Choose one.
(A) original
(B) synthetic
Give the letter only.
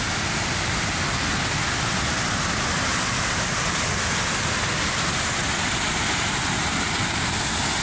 A